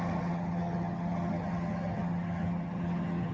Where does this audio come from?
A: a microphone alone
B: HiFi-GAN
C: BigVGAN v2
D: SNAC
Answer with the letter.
B